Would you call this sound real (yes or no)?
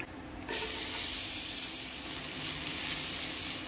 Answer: yes